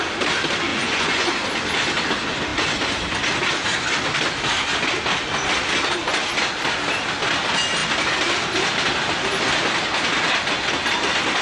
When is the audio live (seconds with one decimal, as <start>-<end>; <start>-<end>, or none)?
0.0-0.7; 1.3-11.4